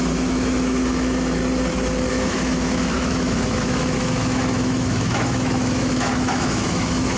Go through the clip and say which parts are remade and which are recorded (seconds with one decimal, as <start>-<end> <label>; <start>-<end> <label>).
0.0-1.4 remade; 1.4-2.1 recorded; 2.1-7.2 remade